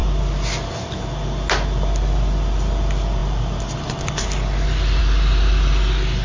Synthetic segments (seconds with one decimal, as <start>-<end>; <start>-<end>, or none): none